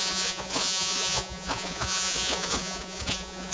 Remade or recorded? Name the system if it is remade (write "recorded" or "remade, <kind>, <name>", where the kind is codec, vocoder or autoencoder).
remade, vocoder, Vocos